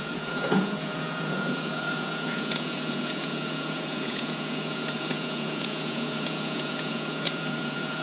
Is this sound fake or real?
fake